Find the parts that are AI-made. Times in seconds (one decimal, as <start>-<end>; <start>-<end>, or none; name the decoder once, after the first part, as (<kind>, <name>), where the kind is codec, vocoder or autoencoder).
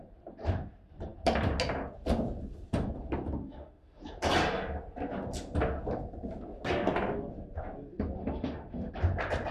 3.4-4.0 (autoencoder, DAC-VAE); 8.2-8.9